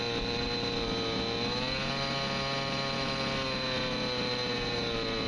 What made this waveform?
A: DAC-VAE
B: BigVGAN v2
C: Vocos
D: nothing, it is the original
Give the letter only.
D